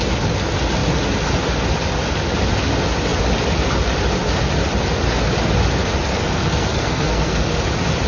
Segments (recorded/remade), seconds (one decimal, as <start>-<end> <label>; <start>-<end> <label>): 0.0-6.1 recorded; 6.1-7.6 remade; 7.6-8.1 recorded